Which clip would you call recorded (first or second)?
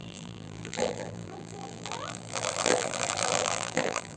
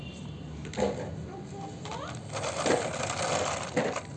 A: second